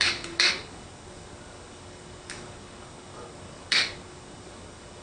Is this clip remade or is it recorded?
remade